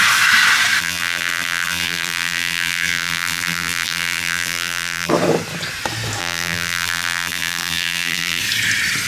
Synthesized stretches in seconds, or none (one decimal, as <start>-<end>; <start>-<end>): 0.8-5.1; 6.2-8.4